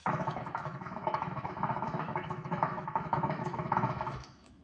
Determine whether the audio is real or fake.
fake